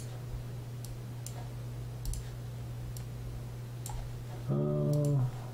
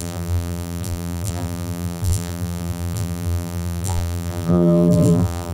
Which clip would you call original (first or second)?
first